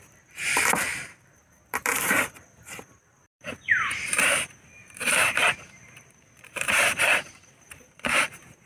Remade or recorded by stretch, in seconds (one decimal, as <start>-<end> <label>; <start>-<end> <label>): 0.0-8.7 remade